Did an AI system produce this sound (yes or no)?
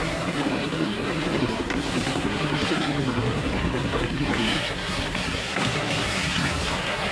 yes